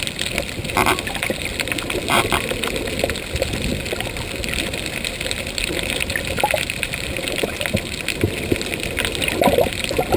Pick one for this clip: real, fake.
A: real